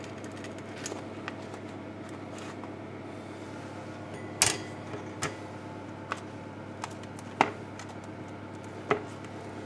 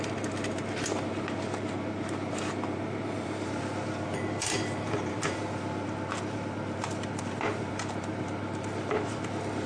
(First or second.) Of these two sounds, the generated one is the second